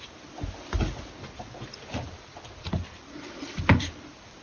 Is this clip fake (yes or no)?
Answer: no